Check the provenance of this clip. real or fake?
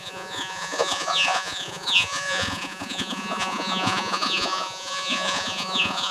fake